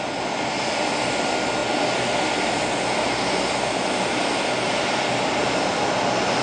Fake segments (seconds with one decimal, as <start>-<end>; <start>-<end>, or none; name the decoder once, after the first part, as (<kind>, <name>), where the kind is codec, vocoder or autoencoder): none